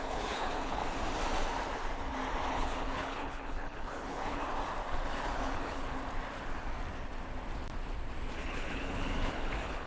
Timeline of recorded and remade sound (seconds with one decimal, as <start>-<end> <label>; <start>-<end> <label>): 0.0-0.8 remade; 0.8-2.5 recorded; 2.5-4.4 remade; 4.4-4.9 recorded; 4.9-6.0 remade; 6.0-8.3 recorded; 8.3-9.9 remade